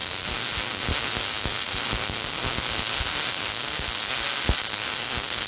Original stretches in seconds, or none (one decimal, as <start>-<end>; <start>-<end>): 0.0-5.5